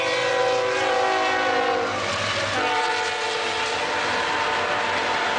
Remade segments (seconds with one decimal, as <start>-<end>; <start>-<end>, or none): none